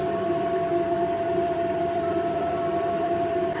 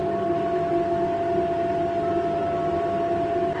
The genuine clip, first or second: second